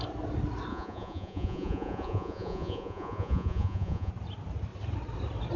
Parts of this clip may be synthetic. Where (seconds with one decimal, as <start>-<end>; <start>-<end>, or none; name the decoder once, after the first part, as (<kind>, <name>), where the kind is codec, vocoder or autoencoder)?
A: 0.7-4.1 (vocoder, Vocos)